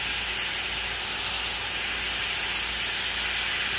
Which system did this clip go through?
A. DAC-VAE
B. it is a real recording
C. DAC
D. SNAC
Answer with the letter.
B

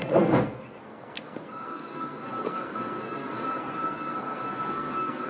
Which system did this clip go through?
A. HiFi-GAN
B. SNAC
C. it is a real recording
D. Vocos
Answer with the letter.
B